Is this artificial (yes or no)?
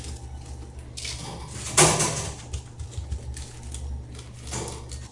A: no